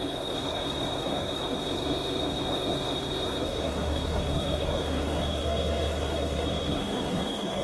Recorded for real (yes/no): no